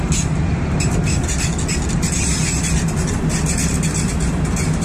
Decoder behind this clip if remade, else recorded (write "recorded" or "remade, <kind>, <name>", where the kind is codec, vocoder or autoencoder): recorded